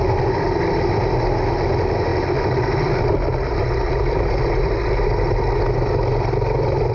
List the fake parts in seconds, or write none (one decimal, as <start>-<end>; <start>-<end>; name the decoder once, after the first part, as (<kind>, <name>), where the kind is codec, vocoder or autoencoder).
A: none